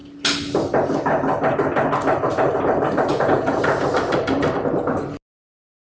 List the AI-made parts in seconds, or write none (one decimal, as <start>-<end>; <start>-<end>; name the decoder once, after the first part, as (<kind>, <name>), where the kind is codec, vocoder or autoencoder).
3.1-3.6 (vocoder, Vocos)